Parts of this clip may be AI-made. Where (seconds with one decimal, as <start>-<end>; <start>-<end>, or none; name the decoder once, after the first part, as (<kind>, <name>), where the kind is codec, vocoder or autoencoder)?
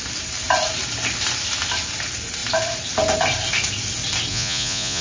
4.3-5.0 (vocoder, Vocos)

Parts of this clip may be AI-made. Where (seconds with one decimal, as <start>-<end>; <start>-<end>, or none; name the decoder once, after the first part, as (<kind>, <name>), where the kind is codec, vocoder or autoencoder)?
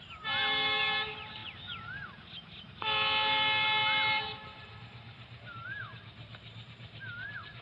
0.0-7.6 (vocoder, BigVGAN v2)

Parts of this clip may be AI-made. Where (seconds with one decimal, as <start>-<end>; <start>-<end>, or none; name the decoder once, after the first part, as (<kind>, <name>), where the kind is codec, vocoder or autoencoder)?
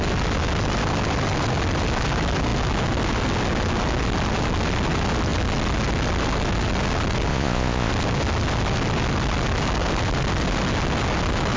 7.3-7.9 (vocoder, Vocos)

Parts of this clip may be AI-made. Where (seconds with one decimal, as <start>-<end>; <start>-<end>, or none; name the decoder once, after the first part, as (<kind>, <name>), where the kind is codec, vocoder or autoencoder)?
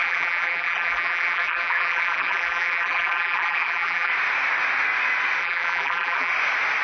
0.0-4.1 (vocoder, BigVGAN v2); 5.4-6.3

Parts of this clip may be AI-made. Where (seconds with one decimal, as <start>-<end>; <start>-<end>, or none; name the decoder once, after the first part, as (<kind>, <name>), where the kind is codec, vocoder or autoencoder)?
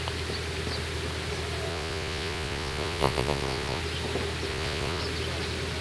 1.7-3.8 (vocoder, Vocos); 4.5-5.0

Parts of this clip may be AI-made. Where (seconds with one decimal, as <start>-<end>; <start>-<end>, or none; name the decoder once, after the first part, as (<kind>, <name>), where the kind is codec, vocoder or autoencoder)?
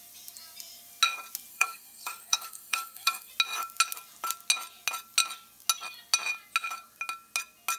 1.5-3.3 (codec, SNAC)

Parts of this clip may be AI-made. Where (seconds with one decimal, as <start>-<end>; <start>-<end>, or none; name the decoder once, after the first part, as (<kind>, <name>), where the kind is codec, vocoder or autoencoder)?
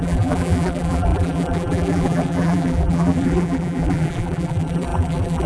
0.0-5.5 (vocoder, BigVGAN v2)